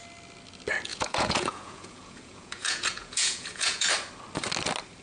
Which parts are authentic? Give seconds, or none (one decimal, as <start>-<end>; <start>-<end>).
0.0-0.9; 3.9-5.0